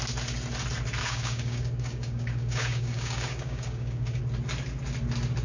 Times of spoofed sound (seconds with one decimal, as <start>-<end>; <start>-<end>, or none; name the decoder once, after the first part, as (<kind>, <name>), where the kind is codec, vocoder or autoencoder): 1.0-4.2 (codec, DAC)